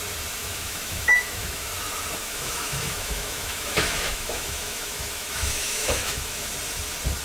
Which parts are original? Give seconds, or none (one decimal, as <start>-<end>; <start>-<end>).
0.0-0.4; 1.7-2.2; 6.5-7.2